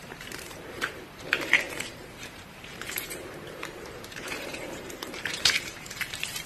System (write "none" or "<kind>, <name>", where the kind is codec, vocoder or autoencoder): vocoder, BigVGAN v2